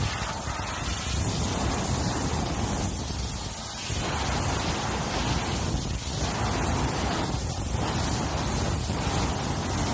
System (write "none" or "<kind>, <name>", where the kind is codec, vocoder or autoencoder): none